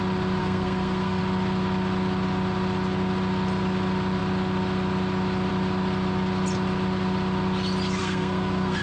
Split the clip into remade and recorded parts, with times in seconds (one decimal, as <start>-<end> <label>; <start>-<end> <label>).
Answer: 0.0-0.4 recorded; 0.4-1.2 remade; 1.2-8.0 recorded; 8.0-8.8 remade